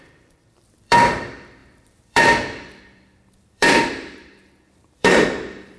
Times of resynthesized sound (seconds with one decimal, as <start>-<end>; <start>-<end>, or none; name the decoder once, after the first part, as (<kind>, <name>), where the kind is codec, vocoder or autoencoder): 0.0-5.8 (vocoder, BigVGAN v2)